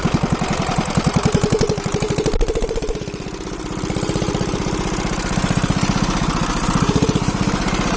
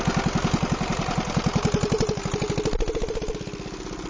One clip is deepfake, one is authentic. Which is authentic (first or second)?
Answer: second